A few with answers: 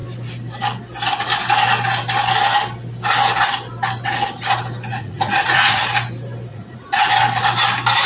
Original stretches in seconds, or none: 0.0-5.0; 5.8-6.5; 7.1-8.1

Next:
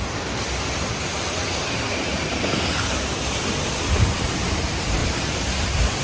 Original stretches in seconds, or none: none